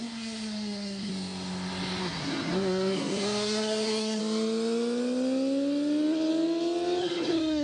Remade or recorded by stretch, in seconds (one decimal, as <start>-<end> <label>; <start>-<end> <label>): 0.0-1.1 remade; 1.1-2.0 recorded; 2.0-4.2 remade; 4.2-7.0 recorded; 7.0-7.6 remade